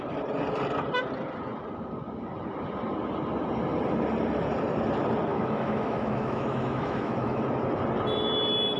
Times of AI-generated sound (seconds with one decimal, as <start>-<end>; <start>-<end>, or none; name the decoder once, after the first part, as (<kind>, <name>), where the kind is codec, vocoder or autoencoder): 5.3-7.4 (autoencoder, DAC-VAE)